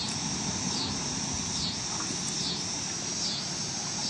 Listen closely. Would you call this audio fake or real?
real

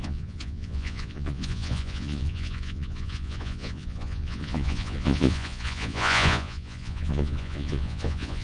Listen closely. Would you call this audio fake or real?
fake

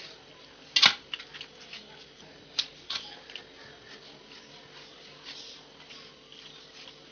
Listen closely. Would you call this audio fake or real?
real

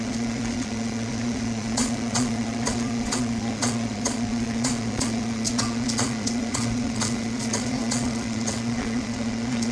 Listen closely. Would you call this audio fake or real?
fake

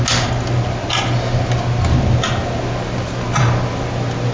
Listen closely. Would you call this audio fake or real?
real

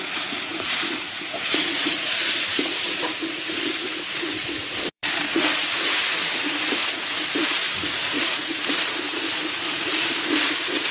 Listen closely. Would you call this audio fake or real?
fake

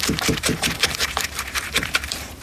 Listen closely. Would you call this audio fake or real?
fake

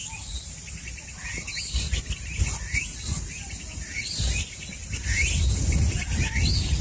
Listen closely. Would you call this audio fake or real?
real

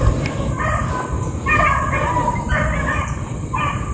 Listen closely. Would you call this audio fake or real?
real